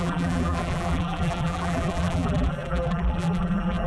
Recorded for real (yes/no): no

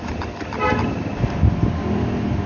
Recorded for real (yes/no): yes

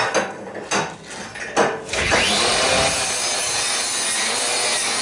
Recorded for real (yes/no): yes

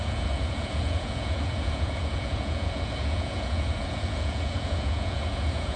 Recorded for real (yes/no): no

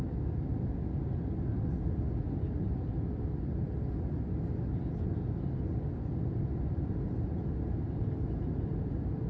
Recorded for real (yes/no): yes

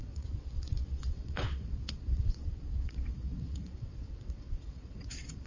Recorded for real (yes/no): no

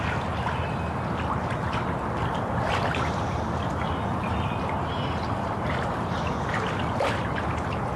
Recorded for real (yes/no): yes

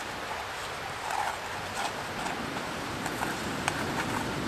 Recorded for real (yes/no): yes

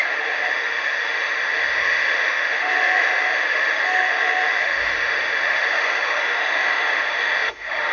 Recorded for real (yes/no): no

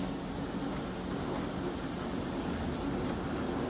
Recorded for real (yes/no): yes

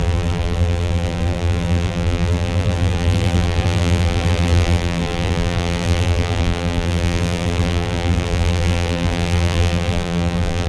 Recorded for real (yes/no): no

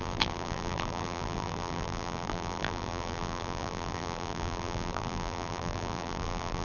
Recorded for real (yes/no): no